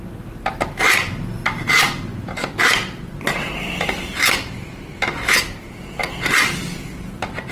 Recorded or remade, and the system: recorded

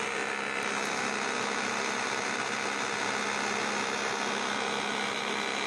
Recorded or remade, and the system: recorded